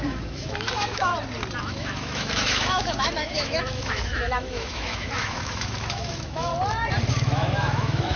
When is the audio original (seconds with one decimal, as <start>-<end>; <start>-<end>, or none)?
1.1-1.6; 6.5-7.1